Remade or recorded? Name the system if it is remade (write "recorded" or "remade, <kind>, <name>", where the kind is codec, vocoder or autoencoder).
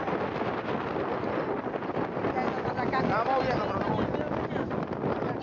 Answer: recorded